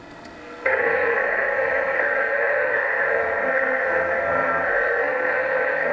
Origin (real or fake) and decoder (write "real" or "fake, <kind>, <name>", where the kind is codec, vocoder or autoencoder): fake, codec, SNAC